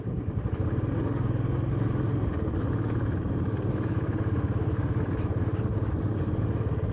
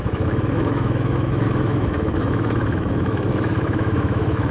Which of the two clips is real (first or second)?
first